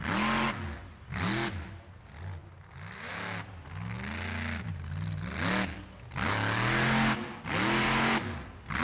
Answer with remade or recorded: recorded